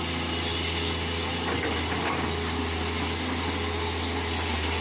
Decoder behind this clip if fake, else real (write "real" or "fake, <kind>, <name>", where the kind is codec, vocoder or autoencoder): real